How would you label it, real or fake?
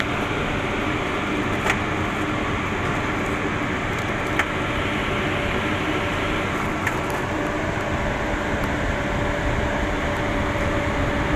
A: real